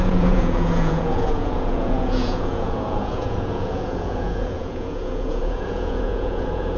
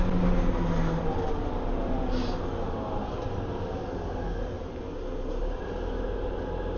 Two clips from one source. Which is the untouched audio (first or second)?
second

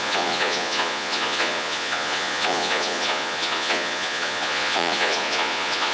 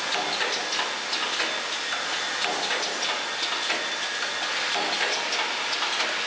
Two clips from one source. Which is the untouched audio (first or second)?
second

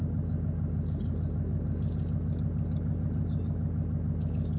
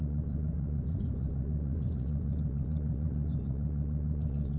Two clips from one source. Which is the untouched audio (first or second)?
first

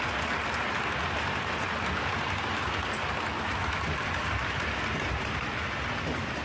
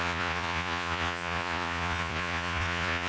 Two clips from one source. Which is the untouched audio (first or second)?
first